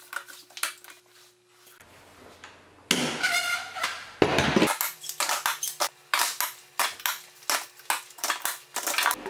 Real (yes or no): yes